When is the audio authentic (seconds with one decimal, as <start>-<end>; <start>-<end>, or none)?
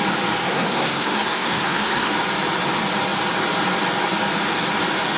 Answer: 0.0-0.4; 2.1-5.2